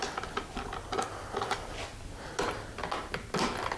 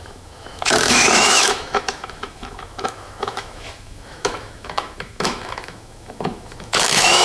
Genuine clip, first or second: first